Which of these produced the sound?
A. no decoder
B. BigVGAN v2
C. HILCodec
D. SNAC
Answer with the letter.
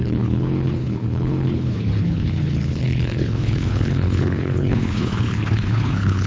C